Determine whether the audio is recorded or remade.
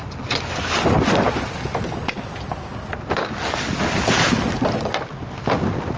recorded